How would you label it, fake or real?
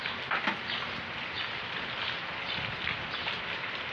real